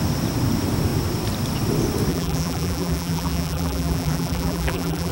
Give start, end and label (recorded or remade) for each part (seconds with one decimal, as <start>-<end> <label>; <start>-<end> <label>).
0.0-2.1 recorded; 2.1-5.1 remade